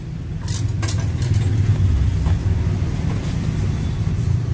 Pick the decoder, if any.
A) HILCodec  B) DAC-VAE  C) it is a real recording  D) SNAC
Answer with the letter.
C